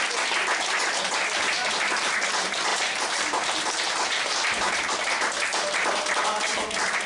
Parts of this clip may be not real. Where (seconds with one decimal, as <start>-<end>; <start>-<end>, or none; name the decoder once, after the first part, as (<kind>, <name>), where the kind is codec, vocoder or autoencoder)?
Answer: 2.7-4.7 (vocoder, BigVGAN v2)

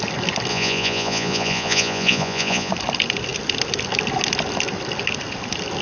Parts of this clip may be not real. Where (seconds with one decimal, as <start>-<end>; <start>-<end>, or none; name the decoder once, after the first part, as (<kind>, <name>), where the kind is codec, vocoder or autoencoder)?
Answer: 0.5-2.7 (vocoder, Vocos)